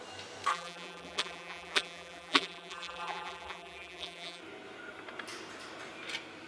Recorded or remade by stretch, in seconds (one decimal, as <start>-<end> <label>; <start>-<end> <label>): 0.0-0.5 recorded; 0.5-4.4 remade; 4.4-6.5 recorded